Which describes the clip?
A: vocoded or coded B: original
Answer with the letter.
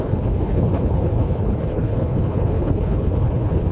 A